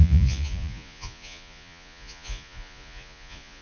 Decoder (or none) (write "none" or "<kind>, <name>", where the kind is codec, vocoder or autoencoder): vocoder, Vocos